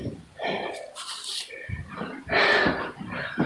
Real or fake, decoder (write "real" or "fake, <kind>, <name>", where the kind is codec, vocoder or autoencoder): real